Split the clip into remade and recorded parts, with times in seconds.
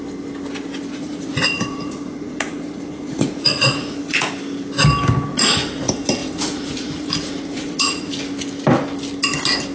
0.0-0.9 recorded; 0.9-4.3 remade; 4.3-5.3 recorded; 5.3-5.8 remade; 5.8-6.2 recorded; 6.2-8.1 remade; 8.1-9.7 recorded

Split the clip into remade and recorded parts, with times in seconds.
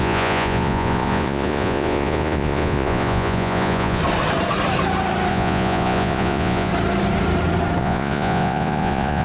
0.0-4.0 remade; 4.0-5.3 recorded; 5.3-6.7 remade; 6.7-7.8 recorded; 7.8-9.2 remade